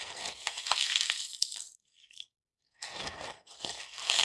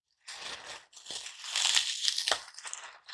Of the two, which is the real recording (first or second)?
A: second